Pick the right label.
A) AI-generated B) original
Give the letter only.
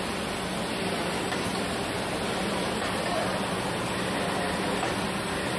B